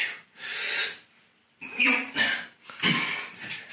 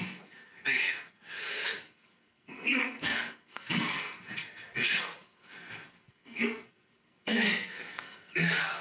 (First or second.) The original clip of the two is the first